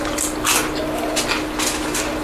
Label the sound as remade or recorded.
recorded